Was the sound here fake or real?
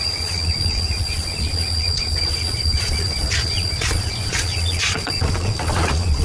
fake